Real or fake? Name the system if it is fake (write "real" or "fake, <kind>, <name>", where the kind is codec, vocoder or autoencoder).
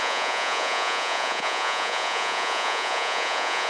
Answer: fake, vocoder, Vocos